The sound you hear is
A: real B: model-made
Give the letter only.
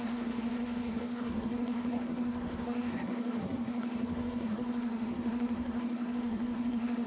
B